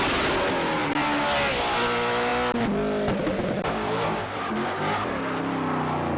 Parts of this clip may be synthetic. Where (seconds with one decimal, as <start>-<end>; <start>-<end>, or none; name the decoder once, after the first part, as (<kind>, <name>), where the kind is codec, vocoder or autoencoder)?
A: none